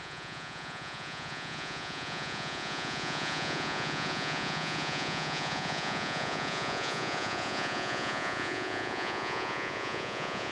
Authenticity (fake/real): fake